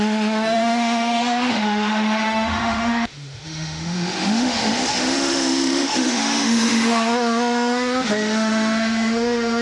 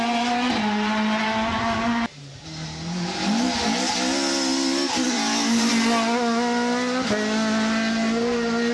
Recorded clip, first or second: second